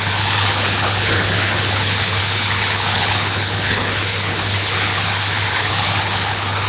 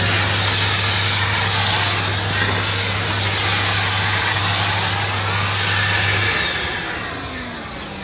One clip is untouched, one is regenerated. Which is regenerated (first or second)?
first